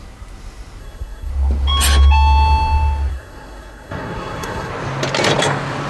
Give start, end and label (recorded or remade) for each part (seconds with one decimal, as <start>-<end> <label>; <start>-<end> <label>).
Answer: 0.0-0.8 recorded; 0.8-1.3 remade; 1.3-3.1 recorded; 3.1-4.7 remade; 4.7-5.9 recorded